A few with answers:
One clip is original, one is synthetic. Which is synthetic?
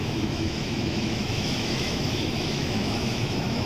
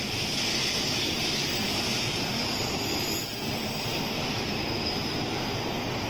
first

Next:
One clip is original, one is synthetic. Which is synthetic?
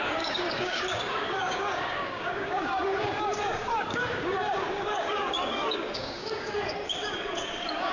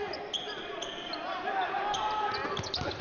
first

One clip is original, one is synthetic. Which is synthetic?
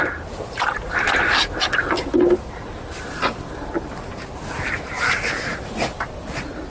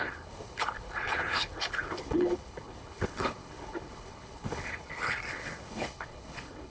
second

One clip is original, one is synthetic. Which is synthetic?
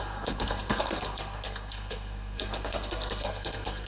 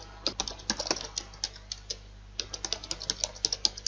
first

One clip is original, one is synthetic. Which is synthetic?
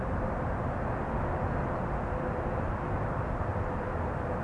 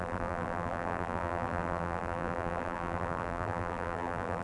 second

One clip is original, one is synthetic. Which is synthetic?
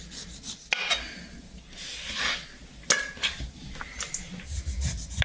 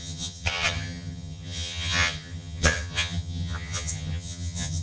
second